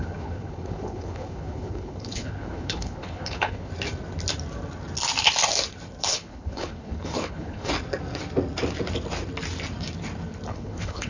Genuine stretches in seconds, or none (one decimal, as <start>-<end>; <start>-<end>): 3.7-6.1; 7.7-10.5